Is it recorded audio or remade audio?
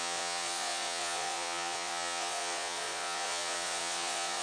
remade